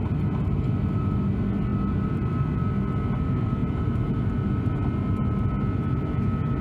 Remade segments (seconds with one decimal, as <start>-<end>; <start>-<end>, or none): 3.6-4.3